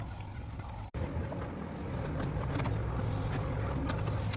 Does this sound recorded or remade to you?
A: recorded